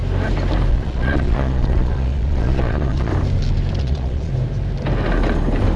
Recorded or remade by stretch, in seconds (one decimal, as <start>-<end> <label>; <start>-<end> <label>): 0.0-0.7 recorded; 0.7-3.1 remade; 3.1-3.8 recorded; 3.8-4.3 remade; 4.3-5.8 recorded